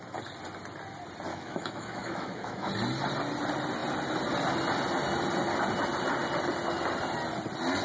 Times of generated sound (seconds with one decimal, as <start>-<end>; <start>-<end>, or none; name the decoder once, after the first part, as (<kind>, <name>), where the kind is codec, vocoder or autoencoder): 1.3-2.7 (autoencoder, DAC-VAE)